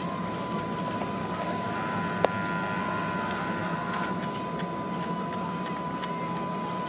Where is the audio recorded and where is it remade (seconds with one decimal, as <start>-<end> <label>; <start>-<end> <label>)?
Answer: 0.0-1.2 recorded; 1.2-1.7 remade; 1.7-6.9 recorded